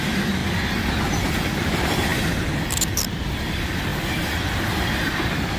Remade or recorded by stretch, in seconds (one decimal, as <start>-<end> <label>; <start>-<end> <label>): 0.0-0.4 remade; 0.4-1.3 recorded; 1.3-2.1 remade; 2.1-3.2 recorded; 3.2-5.6 remade